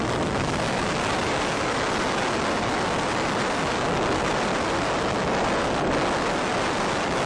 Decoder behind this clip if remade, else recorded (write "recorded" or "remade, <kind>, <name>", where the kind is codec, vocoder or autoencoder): recorded